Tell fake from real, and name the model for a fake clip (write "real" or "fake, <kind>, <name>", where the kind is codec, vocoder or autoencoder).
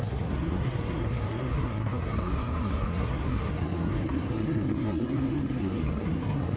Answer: fake, codec, SNAC